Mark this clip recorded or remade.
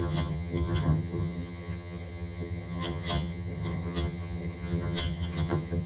remade